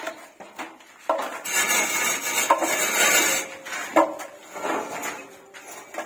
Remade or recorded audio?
recorded